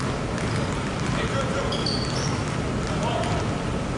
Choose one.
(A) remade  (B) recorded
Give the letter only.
B